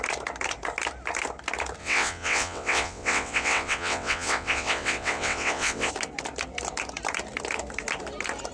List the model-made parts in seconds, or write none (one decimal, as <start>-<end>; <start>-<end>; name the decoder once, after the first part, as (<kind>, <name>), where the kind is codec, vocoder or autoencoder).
1.8-5.9 (vocoder, WaveNeXt)